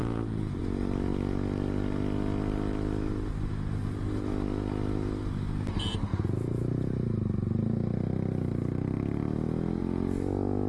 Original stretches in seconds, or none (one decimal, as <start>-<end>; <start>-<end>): 0.6-10.7